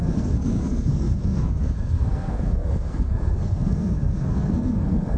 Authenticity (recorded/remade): remade